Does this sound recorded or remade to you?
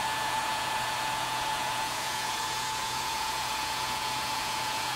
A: remade